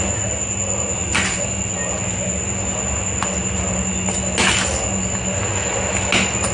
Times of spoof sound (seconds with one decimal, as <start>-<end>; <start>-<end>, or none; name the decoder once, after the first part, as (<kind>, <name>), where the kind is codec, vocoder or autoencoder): none

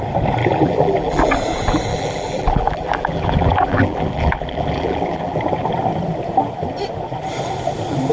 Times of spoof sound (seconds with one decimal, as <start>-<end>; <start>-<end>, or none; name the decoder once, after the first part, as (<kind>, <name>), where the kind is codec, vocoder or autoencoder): 0.4-1.3 (vocoder, BigVGAN v2); 1.9-5.4

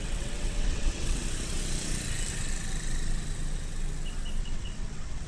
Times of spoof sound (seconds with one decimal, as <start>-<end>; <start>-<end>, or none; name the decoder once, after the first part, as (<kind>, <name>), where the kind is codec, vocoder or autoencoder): 0.0-1.2 (vocoder, WaveNeXt); 4.4-5.3

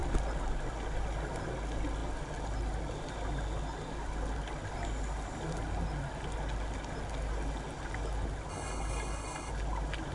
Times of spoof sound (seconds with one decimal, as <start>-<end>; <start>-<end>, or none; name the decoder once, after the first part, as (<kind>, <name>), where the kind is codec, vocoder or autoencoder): 8.5-9.5 (codec, HILCodec)

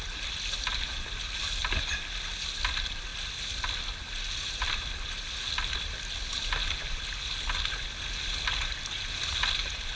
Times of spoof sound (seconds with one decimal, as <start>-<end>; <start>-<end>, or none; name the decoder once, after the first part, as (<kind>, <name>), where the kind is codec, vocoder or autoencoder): none